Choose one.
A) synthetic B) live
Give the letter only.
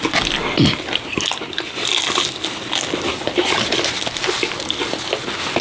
B